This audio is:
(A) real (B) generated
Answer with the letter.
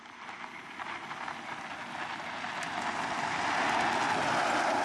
A